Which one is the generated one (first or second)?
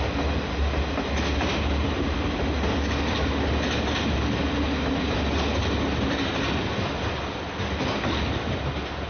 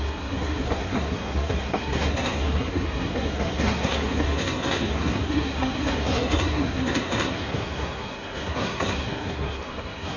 second